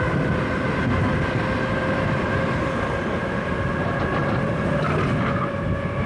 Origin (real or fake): real